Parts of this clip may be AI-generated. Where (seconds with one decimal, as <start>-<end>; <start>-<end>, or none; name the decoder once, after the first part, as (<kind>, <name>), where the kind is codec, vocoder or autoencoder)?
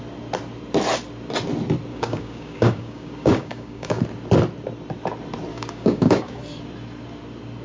1.9-4.0 (codec, DAC); 5.5-6.4